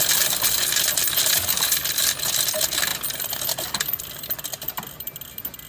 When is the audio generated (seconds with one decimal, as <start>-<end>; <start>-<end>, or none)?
none